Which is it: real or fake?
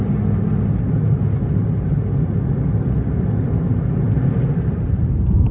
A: real